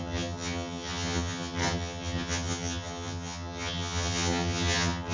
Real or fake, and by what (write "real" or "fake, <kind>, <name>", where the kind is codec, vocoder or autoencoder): fake, vocoder, HiFi-GAN